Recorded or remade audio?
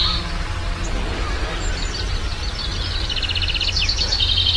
recorded